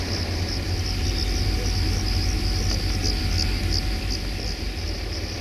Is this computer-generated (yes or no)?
no